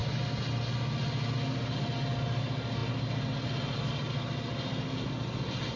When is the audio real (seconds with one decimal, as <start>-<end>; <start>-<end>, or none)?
0.0-5.8